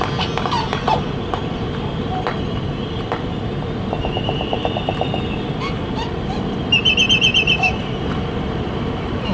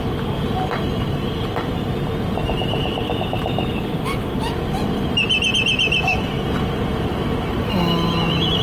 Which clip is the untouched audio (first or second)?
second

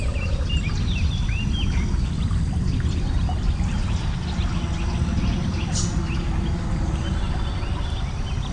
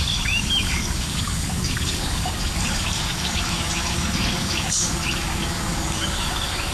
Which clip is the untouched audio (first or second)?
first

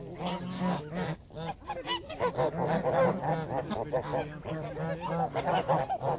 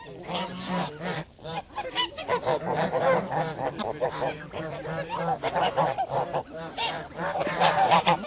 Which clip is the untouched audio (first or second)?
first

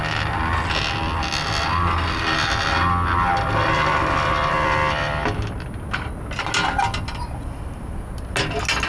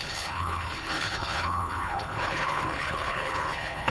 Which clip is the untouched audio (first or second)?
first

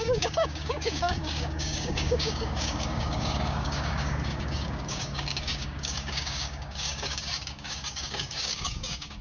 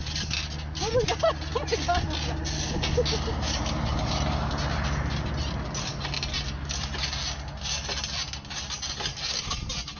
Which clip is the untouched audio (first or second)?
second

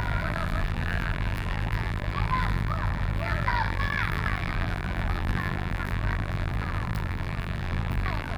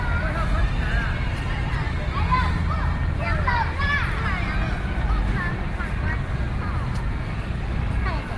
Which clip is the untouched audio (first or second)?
second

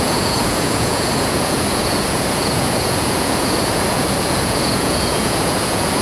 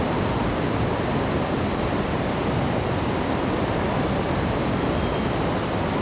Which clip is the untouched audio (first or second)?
second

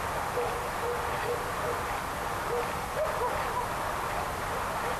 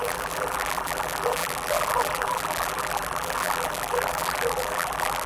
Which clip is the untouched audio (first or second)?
first